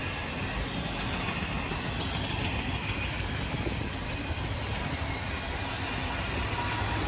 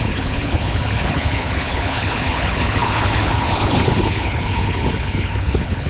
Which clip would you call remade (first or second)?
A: second